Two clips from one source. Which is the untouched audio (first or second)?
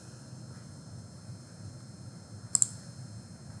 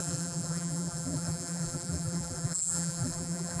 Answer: first